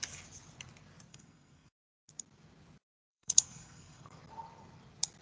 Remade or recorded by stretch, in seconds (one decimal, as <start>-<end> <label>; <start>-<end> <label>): 0.0-1.1 recorded; 1.1-2.1 remade; 2.1-3.1 recorded; 3.1-4.2 remade; 4.2-5.2 recorded